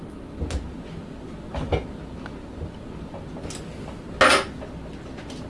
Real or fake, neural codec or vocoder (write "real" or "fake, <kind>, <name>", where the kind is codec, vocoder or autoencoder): real